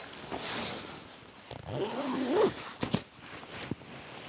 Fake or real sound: real